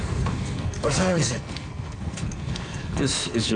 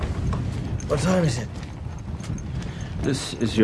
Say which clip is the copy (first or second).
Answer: first